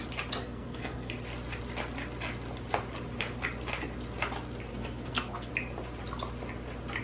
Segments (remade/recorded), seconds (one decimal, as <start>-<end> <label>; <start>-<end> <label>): 0.0-0.4 recorded; 0.4-1.1 remade; 1.1-4.7 recorded; 4.7-5.5 remade; 5.5-7.0 recorded